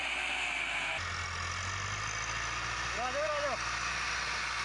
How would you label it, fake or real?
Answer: real